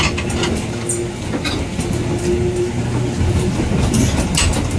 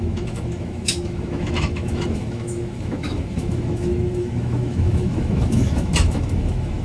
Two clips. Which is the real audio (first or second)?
first